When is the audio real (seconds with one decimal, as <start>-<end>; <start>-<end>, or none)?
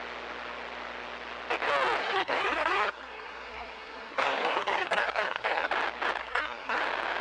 0.0-2.0; 5.7-6.2; 6.8-7.2